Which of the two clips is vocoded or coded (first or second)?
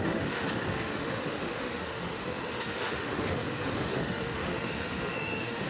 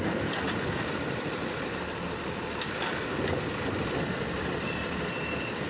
first